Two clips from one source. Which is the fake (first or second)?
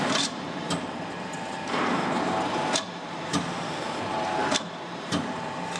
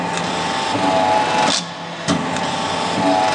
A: first